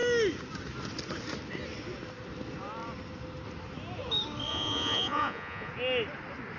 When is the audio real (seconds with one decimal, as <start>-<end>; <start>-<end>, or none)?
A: 0.0-4.5; 5.7-6.6

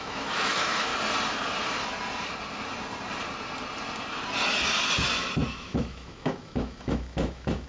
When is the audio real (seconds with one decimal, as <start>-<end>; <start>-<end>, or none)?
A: 0.9-5.5

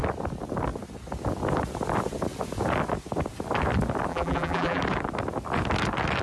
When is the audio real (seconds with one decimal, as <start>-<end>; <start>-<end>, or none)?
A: 0.0-4.1; 4.8-6.2

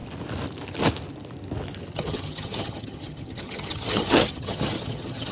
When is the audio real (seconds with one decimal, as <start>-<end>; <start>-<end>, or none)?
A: 0.0-1.9

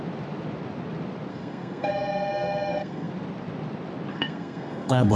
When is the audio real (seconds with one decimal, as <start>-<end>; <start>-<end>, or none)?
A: 0.0-1.3; 3.1-4.1

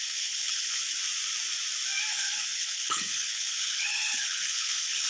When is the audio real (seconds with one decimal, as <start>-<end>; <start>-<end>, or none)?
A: 0.8-2.1

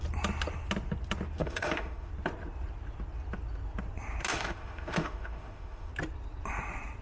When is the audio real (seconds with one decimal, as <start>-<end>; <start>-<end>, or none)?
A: 0.0-1.4; 2.1-4.3; 5.9-7.0

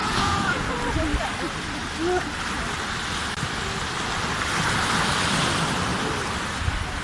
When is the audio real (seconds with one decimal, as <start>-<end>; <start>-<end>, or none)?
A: 0.7-7.0